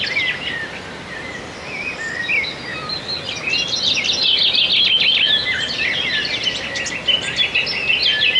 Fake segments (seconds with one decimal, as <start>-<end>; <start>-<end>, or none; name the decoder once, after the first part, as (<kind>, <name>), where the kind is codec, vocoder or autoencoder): none